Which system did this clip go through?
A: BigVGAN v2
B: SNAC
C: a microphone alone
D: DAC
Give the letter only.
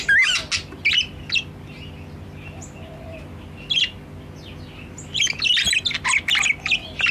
C